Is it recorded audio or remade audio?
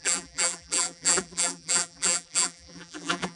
remade